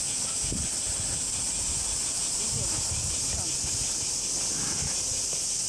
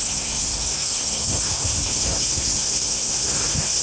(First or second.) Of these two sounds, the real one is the first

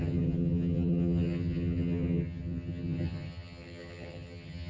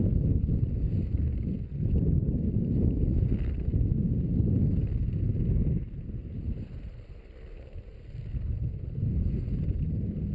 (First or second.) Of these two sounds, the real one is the second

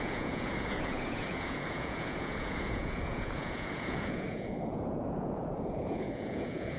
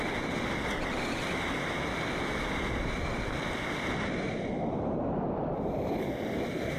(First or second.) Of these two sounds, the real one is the second